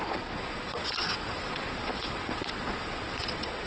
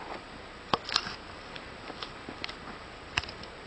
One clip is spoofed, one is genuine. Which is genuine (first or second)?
second